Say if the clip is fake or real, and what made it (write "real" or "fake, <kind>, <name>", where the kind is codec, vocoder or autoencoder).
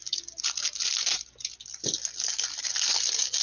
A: real